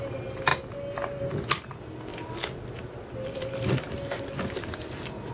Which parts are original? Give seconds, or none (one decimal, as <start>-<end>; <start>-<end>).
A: 0.0-5.3